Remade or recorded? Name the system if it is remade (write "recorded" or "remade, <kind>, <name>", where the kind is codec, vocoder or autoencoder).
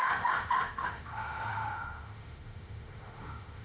remade, autoencoder, DAC-VAE